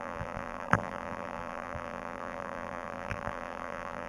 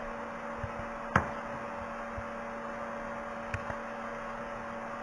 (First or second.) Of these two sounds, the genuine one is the second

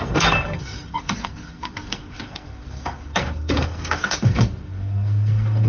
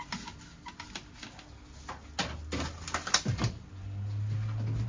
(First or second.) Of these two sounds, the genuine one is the second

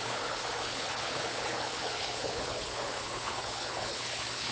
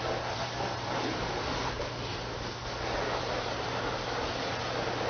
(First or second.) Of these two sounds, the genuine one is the second